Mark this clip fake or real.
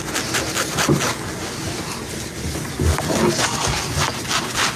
real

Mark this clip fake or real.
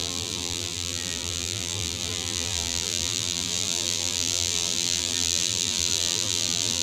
fake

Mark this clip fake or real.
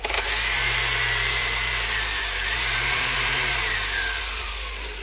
fake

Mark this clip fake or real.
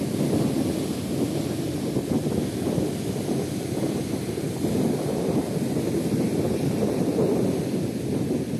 fake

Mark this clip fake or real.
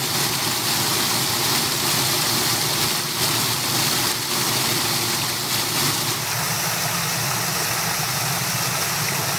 real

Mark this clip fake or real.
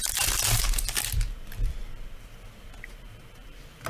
fake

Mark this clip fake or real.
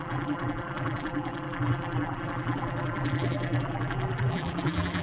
fake